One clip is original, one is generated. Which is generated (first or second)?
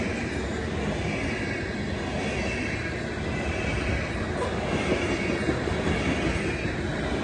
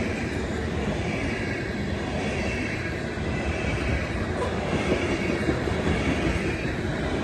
second